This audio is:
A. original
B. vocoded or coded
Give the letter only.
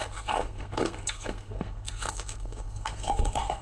B